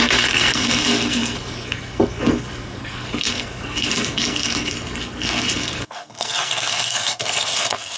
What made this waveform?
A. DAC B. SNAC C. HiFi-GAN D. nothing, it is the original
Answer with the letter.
B